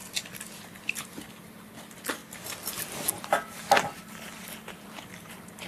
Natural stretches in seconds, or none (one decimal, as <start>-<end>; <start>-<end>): 0.0-0.6; 2.2-3.1; 3.6-4.8

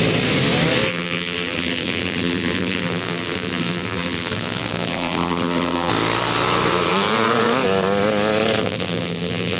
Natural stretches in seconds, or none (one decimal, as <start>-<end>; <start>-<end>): 0.0-0.9; 5.9-8.6

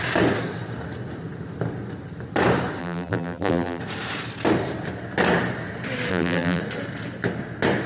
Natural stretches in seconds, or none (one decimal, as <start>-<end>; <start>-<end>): 0.0-2.8; 3.8-6.1; 6.6-7.9

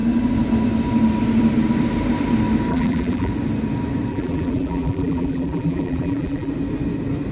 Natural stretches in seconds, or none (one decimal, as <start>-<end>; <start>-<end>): 0.0-2.7; 3.3-4.1; 6.5-7.3

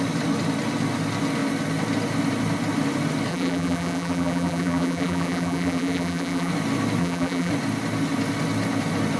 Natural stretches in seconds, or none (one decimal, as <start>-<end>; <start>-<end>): 0.0-3.3; 6.5-7.0; 7.5-9.2

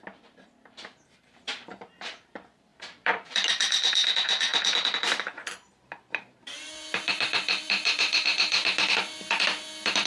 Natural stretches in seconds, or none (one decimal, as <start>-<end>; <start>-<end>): none

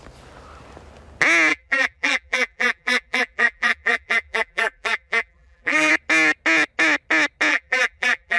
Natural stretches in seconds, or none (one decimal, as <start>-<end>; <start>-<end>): 0.0-1.5; 5.9-7.5